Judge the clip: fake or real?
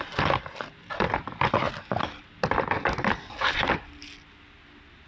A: real